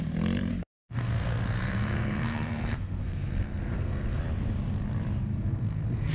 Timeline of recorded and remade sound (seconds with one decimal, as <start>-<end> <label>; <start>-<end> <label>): 0.0-0.5 recorded; 0.5-4.2 remade; 4.2-5.3 recorded; 5.3-6.1 remade